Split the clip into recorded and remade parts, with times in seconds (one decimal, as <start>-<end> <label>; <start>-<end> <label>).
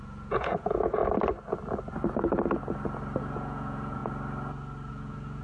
0.0-1.0 remade; 1.0-3.2 recorded; 3.2-4.0 remade; 4.0-4.9 recorded; 4.9-5.4 remade